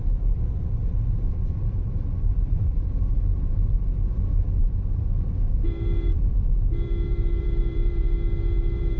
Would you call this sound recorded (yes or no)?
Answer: no